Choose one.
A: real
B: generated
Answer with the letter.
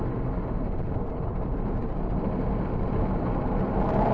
A